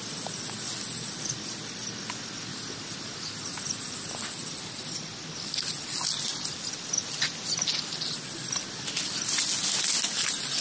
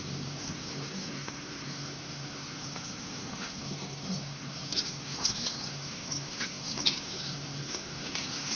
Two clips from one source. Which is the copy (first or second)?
second